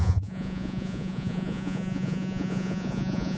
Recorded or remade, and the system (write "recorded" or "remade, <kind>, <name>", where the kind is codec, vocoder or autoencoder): remade, vocoder, Vocos